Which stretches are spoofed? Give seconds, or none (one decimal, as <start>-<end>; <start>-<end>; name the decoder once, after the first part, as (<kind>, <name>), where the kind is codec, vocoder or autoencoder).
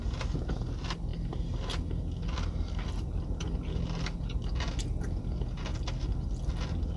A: none